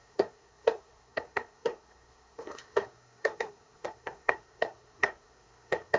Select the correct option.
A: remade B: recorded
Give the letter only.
A